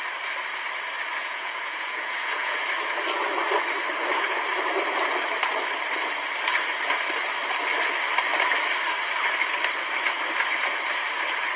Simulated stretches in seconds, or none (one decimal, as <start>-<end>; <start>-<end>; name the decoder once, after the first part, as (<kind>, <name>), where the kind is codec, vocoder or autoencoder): 1.2-2.6 (vocoder, Vocos)